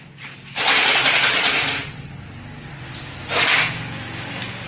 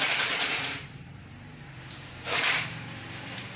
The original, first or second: first